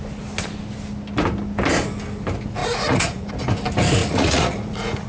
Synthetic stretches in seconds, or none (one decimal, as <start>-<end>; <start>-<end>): 2.6-3.3; 4.0-5.1